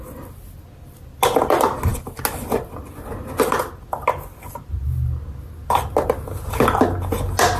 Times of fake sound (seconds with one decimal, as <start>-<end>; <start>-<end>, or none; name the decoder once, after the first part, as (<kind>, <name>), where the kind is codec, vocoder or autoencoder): none